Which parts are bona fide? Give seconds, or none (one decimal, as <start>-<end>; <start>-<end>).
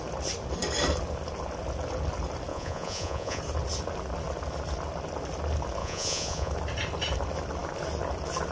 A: 0.0-2.5; 3.4-5.8; 6.5-8.5